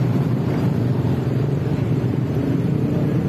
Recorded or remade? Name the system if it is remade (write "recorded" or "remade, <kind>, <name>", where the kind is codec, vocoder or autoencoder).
remade, vocoder, BigVGAN v2